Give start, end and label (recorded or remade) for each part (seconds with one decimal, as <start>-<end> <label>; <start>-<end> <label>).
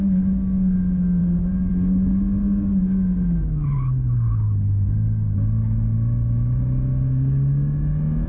0.0-8.3 recorded